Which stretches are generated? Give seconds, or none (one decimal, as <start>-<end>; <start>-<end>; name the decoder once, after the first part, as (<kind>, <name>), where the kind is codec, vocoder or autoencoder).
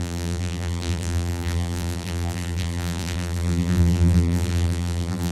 0.0-5.3 (vocoder, BigVGAN v2)